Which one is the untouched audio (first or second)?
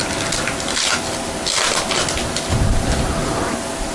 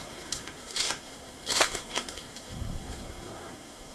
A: first